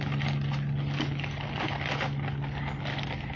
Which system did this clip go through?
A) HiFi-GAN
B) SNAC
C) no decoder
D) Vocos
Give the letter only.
C